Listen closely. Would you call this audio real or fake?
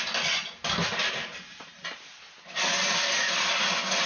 real